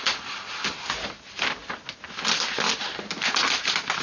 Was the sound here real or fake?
real